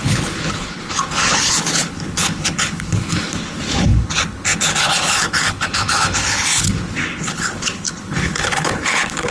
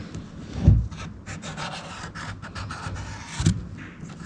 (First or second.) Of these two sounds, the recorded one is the second